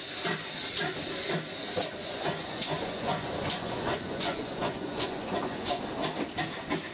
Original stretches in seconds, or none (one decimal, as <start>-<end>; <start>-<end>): 0.0-2.0; 5.8-6.9